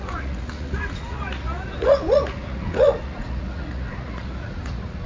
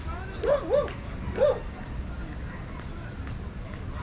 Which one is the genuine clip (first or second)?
second